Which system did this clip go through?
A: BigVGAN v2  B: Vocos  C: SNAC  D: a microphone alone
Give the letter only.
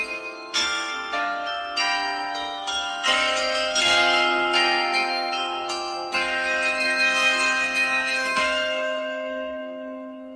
C